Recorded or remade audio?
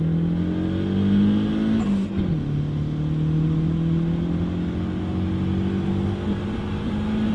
recorded